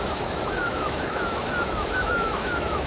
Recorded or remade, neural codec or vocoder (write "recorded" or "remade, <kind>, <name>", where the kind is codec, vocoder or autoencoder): remade, autoencoder, DAC-VAE